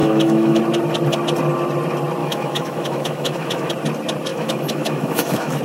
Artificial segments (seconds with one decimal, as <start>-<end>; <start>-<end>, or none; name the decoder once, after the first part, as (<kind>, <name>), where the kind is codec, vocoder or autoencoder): 0.0-0.6 (autoencoder, DAC-VAE); 2.2-3.7; 4.3-5.6